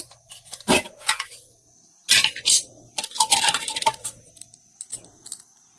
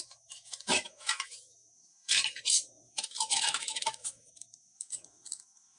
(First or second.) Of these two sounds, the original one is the first